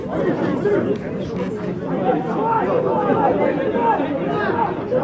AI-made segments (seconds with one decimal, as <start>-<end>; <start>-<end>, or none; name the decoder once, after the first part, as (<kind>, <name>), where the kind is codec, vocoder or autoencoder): none

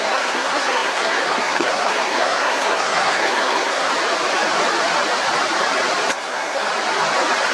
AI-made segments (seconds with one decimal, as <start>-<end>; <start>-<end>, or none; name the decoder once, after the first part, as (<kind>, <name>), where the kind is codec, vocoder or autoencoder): 0.0-3.9 (codec, SNAC); 6.1-6.7